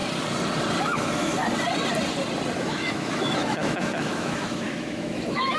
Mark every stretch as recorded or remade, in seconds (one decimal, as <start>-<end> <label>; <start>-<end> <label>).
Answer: 0.0-0.8 recorded; 0.8-1.3 remade; 1.3-2.6 recorded; 2.6-5.6 remade